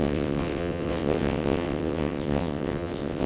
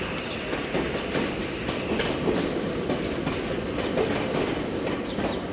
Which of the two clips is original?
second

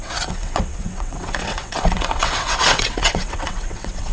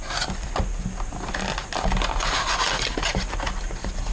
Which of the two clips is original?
second